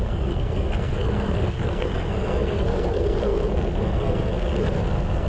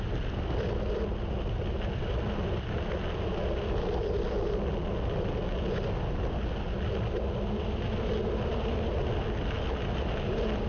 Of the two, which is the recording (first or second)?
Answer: second